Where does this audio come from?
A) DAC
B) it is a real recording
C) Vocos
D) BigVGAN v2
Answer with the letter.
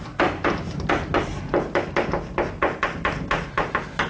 B